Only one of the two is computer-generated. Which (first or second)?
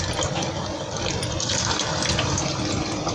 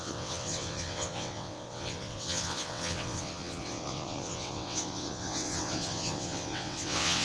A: second